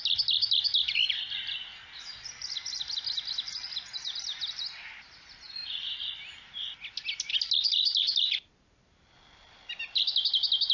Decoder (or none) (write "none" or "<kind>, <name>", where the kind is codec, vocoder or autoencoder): none